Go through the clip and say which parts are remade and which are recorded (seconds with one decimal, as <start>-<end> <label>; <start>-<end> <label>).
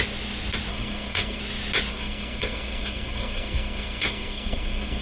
0.0-0.7 recorded; 0.7-1.4 remade; 1.4-1.9 recorded; 1.9-5.0 remade